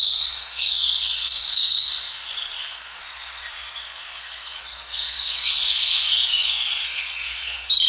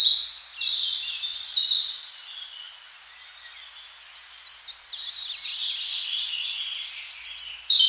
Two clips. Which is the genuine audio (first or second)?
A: second